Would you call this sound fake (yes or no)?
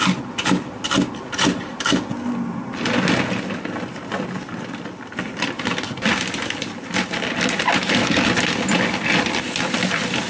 no